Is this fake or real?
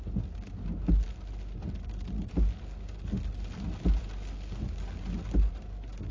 real